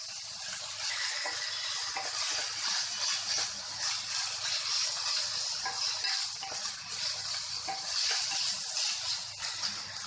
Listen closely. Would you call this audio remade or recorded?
recorded